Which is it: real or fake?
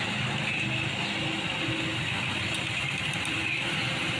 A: real